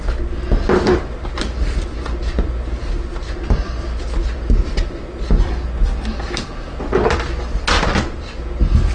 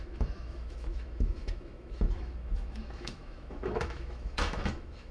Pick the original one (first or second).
first